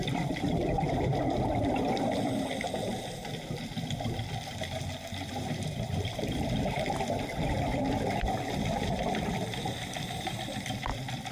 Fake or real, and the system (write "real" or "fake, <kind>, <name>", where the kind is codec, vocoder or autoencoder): fake, vocoder, BigVGAN v2